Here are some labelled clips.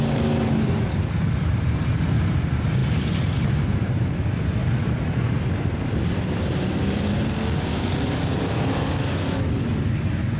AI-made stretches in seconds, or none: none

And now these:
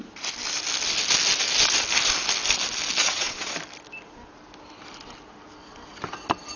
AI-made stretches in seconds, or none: 3.0-3.5 (vocoder, WaveNeXt)

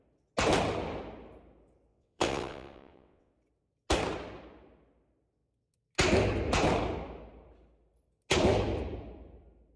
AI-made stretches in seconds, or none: 1.9-3.3 (vocoder, WaveNeXt)

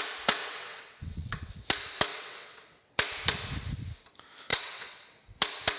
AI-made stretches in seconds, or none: 0.4-1.5 (vocoder, WaveNeXt); 2.1-2.9; 4.5-5.2

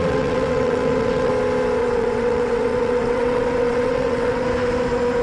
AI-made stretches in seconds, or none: 0.0-1.3 (vocoder, WaveNeXt); 1.8-4.4